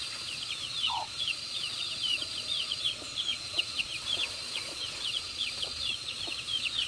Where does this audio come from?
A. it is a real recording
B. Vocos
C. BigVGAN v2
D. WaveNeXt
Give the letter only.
B